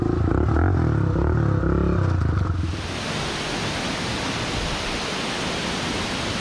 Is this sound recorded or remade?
recorded